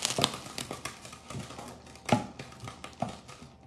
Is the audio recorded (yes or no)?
yes